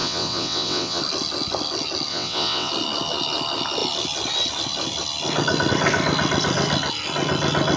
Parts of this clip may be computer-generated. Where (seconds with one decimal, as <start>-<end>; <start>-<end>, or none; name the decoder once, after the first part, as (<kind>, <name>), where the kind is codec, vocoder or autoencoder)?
0.0-1.0 (vocoder, WaveNeXt); 2.1-2.7